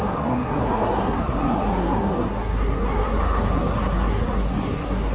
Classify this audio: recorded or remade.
remade